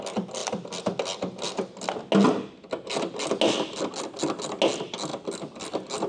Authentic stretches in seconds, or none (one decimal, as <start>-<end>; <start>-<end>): 0.0-6.1